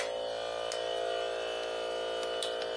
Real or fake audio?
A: real